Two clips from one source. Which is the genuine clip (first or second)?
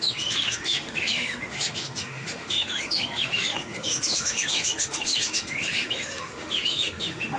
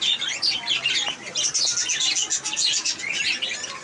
second